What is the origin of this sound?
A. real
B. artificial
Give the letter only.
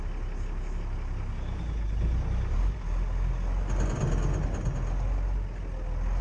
A